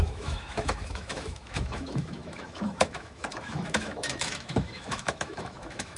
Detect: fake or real fake